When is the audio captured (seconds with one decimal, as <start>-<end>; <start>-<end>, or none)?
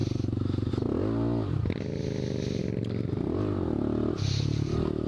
0.7-5.1